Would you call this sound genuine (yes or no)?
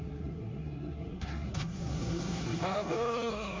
no